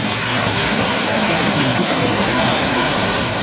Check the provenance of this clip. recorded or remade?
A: remade